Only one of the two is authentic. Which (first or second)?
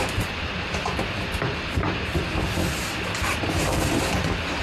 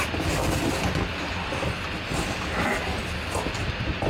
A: second